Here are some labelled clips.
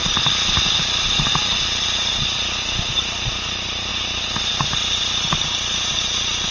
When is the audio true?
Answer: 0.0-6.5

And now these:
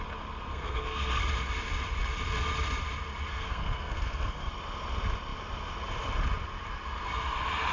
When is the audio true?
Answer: 0.0-0.5; 1.2-3.3; 4.5-7.7

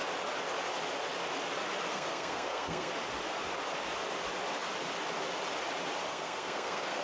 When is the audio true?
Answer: 0.0-1.9; 2.9-6.1

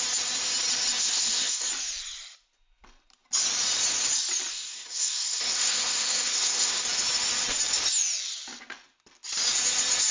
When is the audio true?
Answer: 0.0-1.0; 1.7-4.5; 6.8-10.1

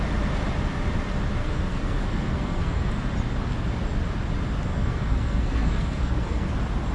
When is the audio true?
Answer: 0.0-1.4; 2.9-4.7; 6.5-6.9

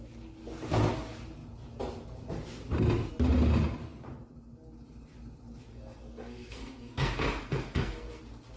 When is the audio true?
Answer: 0.0-5.7; 8.2-8.6

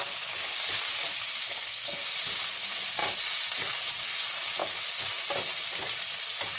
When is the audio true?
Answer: 0.0-1.5; 2.0-6.6